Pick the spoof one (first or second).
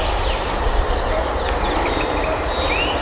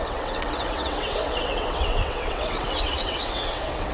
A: second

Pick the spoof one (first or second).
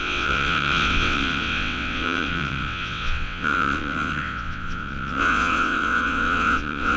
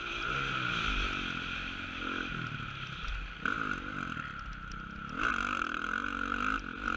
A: first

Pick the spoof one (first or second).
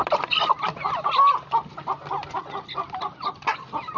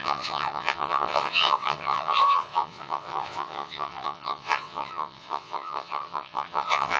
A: second